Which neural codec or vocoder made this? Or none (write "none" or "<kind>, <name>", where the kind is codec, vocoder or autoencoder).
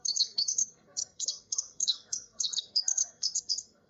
codec, SNAC